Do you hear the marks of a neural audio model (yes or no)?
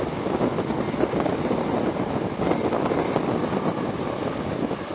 no